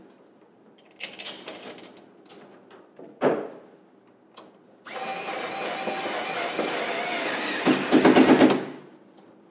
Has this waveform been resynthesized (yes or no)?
no